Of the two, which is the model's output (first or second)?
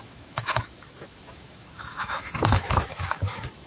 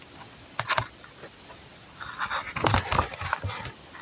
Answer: first